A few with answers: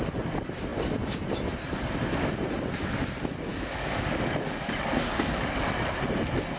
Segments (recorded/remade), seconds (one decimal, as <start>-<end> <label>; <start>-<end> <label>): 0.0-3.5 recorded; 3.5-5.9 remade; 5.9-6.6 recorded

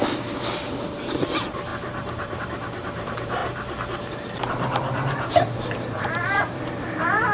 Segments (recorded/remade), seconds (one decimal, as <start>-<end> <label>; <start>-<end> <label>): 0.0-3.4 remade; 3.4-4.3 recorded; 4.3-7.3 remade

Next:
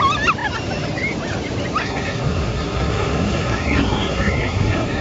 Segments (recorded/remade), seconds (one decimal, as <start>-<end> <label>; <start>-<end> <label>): 0.0-1.8 recorded; 1.8-5.0 remade

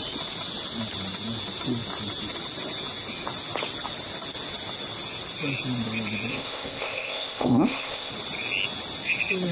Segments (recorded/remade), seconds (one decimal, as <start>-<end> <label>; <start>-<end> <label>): 0.0-6.3 recorded; 6.3-8.1 remade; 8.1-9.5 recorded

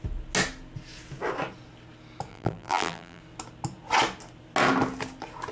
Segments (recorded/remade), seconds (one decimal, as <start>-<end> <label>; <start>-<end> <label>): 0.0-2.3 recorded; 2.3-3.2 remade; 3.2-5.5 recorded